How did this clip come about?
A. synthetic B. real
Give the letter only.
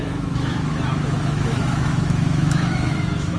A